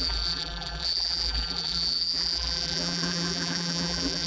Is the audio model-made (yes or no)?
yes